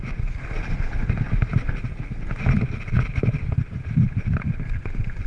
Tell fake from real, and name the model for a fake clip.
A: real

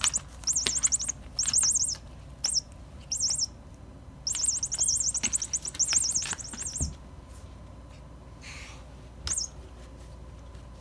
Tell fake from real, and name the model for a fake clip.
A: real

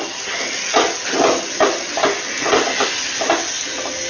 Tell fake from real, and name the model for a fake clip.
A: real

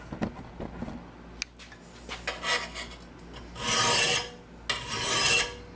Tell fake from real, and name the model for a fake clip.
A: real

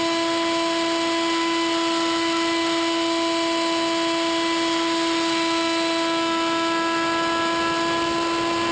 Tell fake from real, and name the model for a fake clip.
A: real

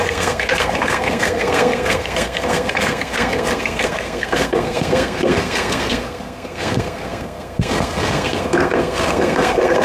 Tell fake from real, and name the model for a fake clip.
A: fake, codec, SNAC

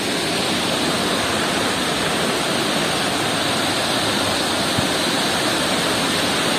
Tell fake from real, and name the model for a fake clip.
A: real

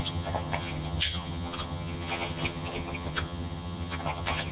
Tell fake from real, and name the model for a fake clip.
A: fake, vocoder, HiFi-GAN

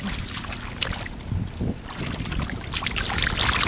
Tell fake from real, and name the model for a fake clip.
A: real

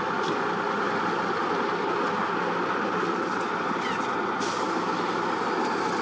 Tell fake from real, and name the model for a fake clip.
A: real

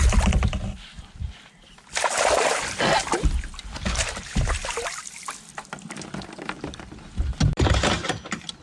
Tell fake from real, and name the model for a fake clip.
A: real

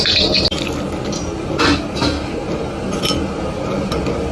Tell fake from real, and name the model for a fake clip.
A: real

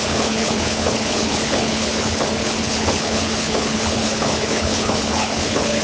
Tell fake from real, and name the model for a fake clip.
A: fake, codec, HILCodec